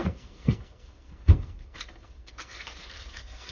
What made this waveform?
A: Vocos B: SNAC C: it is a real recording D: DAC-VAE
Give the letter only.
B